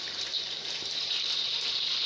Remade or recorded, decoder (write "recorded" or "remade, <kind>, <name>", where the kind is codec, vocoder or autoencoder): remade, vocoder, BigVGAN v2